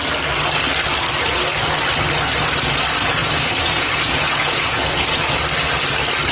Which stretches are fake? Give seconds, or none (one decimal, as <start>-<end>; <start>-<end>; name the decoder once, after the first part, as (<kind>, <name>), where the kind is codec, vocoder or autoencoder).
3.2-5.2 (vocoder, Vocos)